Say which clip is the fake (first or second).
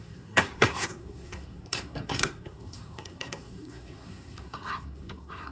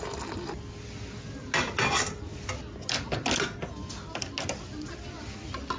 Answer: first